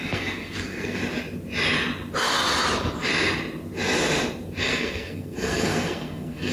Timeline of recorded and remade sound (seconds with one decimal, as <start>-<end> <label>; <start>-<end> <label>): 0.0-1.0 remade; 1.0-4.6 recorded; 4.6-6.5 remade